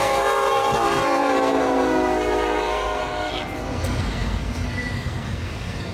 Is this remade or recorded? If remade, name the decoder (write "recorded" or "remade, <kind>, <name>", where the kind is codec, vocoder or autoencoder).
remade, codec, SNAC